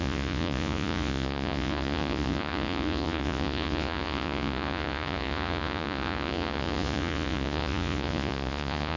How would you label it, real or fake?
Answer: fake